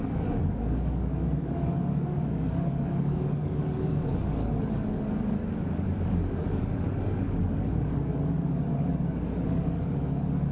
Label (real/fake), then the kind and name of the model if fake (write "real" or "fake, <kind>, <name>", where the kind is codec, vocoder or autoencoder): fake, codec, DAC